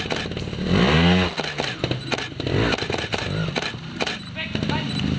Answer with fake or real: real